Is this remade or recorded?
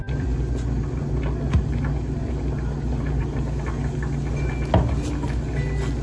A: recorded